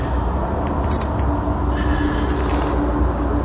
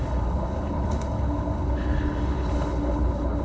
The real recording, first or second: first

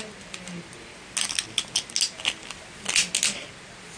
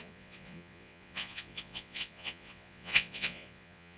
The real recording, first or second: first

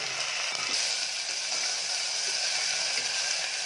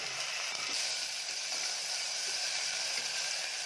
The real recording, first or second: first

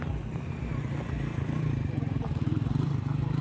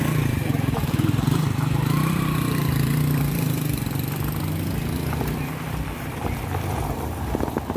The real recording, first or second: first